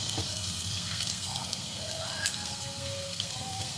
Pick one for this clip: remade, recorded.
remade